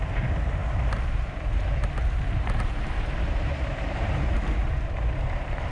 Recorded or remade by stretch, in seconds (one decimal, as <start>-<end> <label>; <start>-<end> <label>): 0.0-5.7 remade